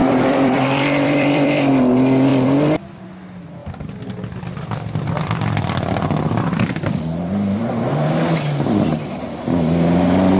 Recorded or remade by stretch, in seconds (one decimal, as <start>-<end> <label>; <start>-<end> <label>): 0.0-1.7 remade; 1.7-2.3 recorded; 2.3-3.1 remade; 3.1-10.4 recorded